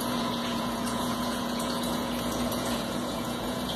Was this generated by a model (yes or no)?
yes